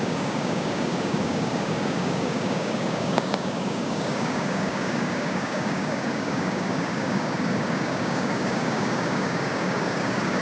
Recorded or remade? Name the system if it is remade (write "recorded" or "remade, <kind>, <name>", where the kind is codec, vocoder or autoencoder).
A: remade, codec, DAC